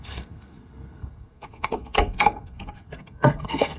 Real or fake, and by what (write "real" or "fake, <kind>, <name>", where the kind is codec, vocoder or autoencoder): fake, codec, SNAC